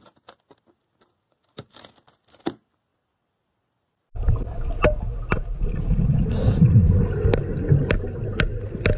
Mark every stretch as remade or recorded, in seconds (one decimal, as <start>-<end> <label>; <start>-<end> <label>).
0.0-9.0 recorded